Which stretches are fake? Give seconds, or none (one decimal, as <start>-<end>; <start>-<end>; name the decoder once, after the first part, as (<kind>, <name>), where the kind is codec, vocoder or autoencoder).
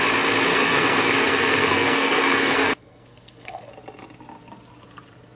0.5-3.7 (codec, SNAC)